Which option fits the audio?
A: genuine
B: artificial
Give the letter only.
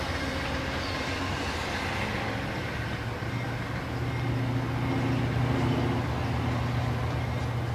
A